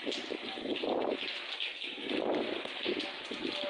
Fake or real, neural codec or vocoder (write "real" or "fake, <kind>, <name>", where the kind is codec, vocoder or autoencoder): real